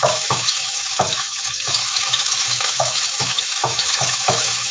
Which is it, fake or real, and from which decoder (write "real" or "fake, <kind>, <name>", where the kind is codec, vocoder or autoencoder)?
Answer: fake, autoencoder, DAC-VAE